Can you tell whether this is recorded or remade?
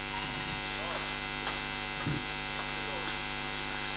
recorded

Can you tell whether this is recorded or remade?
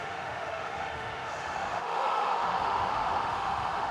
remade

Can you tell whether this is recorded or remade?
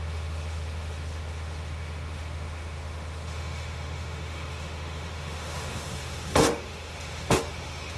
remade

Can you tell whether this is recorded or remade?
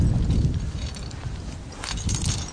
recorded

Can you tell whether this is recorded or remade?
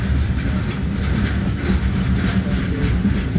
recorded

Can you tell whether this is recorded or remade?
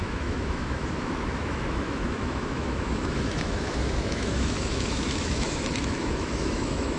remade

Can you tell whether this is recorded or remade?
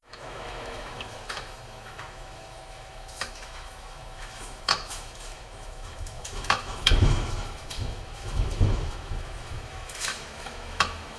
remade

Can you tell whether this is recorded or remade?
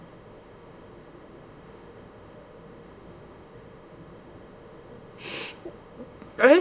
remade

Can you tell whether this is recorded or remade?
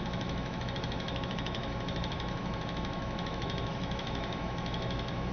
remade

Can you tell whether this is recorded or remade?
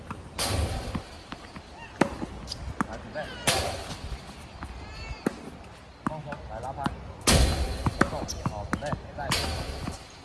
recorded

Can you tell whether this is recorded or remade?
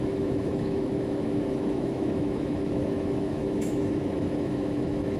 remade